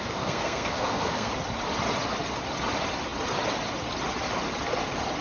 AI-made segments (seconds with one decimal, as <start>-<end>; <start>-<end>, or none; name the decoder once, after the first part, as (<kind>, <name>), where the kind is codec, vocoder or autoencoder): 0.0-1.3 (codec, SNAC)